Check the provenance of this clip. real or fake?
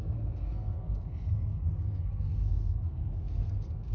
fake